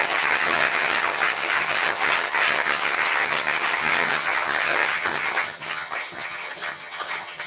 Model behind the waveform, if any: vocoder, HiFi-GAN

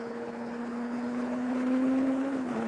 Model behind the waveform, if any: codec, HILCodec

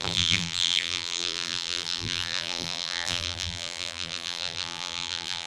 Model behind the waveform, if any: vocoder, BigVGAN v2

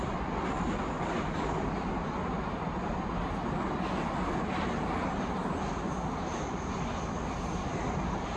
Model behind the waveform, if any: none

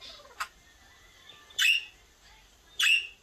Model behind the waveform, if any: none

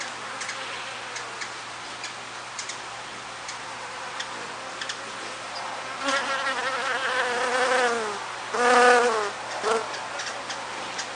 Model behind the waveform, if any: none